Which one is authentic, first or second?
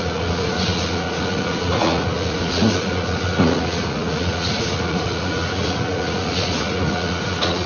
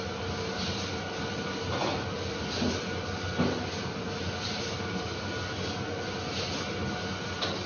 second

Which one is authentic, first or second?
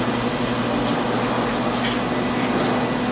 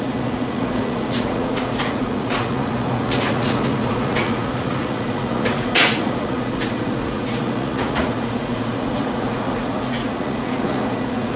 first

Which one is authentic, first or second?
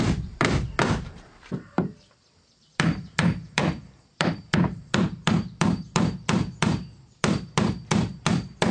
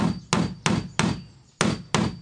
second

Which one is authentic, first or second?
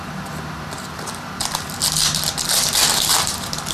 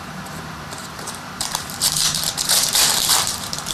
first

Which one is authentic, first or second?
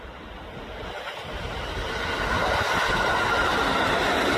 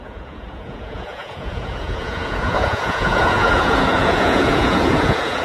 first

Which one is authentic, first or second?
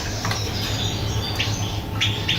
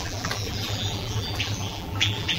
first